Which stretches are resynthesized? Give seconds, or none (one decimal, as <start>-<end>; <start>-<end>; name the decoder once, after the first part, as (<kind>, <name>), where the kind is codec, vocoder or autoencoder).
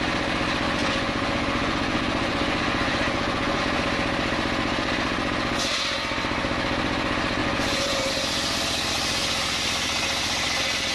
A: 0.8-3.6 (vocoder, Vocos); 7.4-8.1